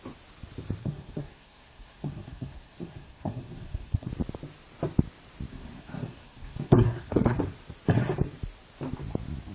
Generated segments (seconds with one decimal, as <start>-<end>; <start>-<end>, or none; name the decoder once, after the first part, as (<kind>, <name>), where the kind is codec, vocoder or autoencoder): 0.8-4.1 (codec, SNAC); 5.5-7.4